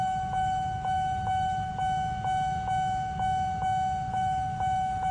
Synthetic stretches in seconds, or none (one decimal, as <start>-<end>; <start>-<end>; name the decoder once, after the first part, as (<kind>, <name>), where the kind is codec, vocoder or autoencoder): 0.0-1.7 (autoencoder, DAC-VAE); 4.1-5.1